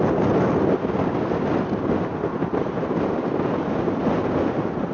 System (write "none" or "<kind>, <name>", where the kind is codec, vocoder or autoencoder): none